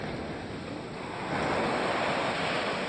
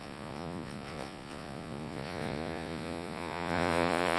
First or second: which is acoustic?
first